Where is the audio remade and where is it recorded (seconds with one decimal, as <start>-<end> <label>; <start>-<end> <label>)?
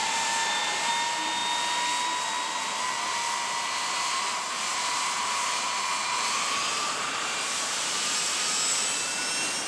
0.0-0.9 remade; 0.9-4.7 recorded; 4.7-5.4 remade; 5.4-6.7 recorded; 6.7-8.1 remade; 8.1-9.7 recorded